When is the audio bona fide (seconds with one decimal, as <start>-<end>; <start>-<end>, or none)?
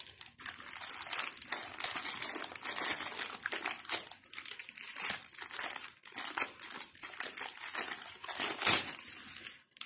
0.0-9.9